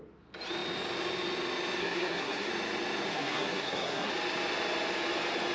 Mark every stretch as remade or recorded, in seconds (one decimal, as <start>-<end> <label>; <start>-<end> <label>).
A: 0.0-1.8 recorded; 1.8-2.5 remade; 2.5-3.1 recorded; 3.1-4.1 remade; 4.1-5.5 recorded